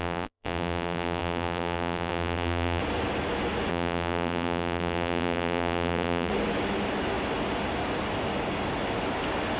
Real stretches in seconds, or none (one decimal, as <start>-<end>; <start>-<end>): 2.8-3.7; 6.3-9.6